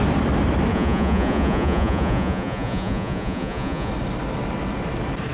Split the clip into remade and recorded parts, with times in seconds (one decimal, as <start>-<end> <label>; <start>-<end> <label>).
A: 0.0-0.7 recorded; 0.7-3.9 remade; 3.9-5.3 recorded